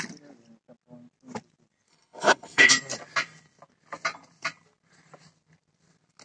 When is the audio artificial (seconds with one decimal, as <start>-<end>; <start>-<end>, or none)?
1.9-2.7